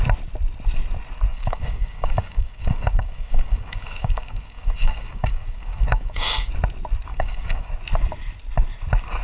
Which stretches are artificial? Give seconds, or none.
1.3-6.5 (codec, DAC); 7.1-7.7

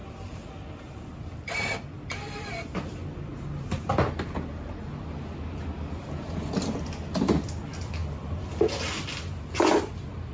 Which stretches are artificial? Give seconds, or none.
0.0-1.1 (vocoder, BigVGAN v2); 3.3-3.9

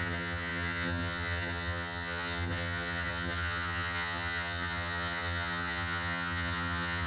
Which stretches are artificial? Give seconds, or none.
0.0-7.1 (vocoder, HiFi-GAN)

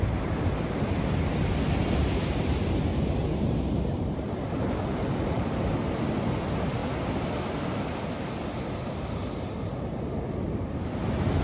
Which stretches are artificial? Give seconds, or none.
3.2-5.7 (vocoder, BigVGAN v2)

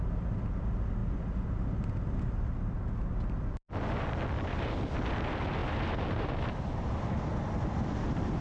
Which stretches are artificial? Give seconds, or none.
none